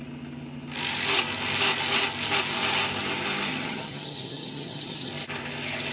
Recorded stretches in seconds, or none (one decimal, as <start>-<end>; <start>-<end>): 0.0-3.5; 5.1-5.9